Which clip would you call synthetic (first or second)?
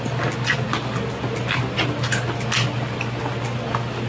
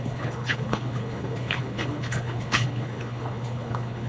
second